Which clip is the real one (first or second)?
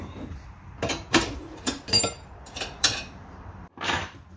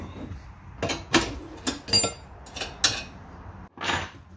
second